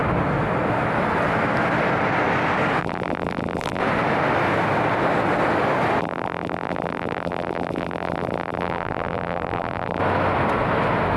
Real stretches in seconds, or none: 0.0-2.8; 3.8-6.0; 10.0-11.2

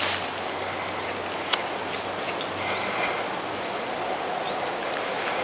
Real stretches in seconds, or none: 0.0-5.4

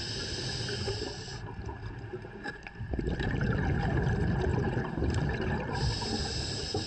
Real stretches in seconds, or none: 0.0-4.5; 5.9-6.9

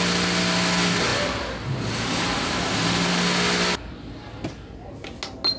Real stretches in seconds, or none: 0.0-5.6

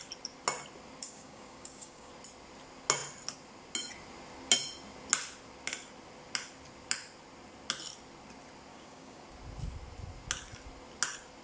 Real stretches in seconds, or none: 0.0-1.0; 2.1-8.7; 9.2-11.4

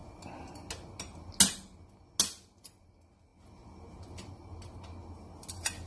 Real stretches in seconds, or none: 0.0-5.9

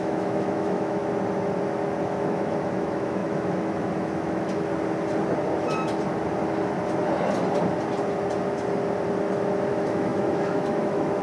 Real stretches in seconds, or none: 1.0-2.0; 4.7-9.7

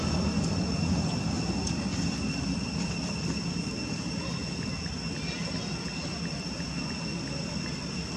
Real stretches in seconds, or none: 0.0-8.2